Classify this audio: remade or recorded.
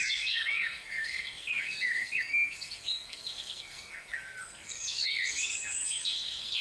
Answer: remade